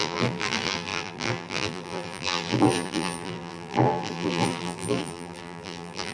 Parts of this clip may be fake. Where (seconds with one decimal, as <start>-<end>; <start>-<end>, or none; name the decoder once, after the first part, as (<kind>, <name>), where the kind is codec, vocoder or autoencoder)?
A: 0.0-6.1 (vocoder, BigVGAN v2)